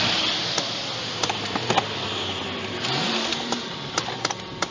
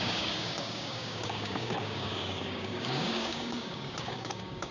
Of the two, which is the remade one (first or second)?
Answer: second